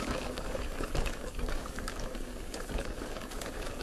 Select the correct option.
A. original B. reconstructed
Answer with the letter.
B